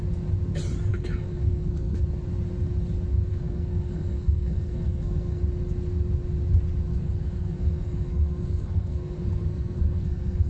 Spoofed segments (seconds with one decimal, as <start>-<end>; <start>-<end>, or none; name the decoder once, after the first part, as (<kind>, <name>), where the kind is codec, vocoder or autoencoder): 0.9-2.0 (codec, SNAC); 3.3-5.4; 6.9-10.5